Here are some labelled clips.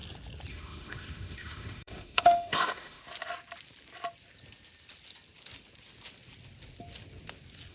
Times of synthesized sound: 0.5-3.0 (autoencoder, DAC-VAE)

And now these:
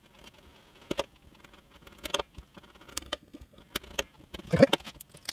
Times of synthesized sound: 2.9-3.6 (codec, SNAC)

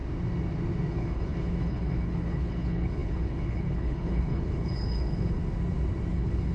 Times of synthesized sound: 0.9-5.4 (codec, HILCodec); 6.1-6.5

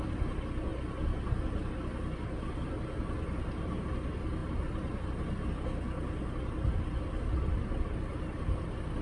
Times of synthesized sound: none

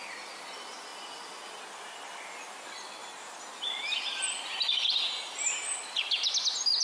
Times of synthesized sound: none

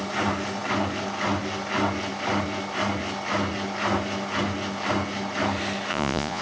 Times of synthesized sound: 5.9-6.4 (vocoder, Vocos)

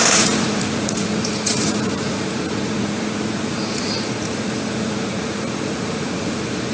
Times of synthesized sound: 0.0-6.7 (vocoder, Vocos)

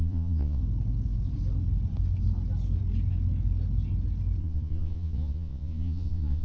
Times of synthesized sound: 0.0-0.6 (vocoder, Vocos); 4.4-6.4